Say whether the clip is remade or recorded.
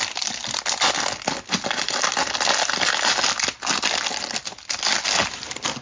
recorded